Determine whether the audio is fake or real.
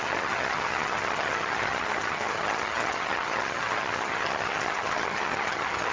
fake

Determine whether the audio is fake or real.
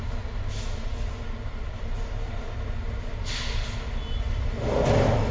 real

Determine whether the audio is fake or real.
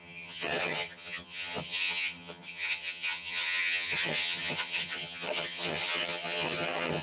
fake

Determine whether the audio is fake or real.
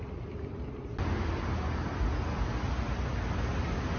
real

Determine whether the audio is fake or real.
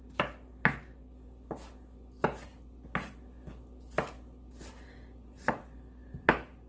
real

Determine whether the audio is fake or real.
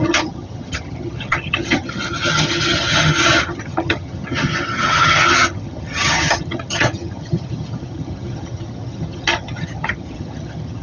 fake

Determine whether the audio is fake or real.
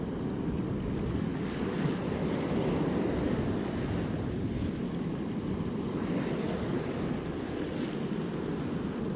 real